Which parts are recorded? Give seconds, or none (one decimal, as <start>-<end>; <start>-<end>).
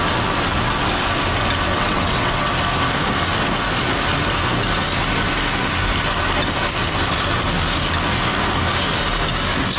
0.0-1.7; 2.5-9.8